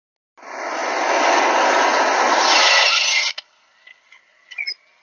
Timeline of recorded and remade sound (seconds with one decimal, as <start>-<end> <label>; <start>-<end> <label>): 0.0-5.0 recorded